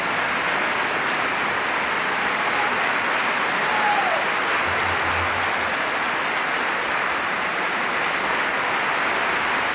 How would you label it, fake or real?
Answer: real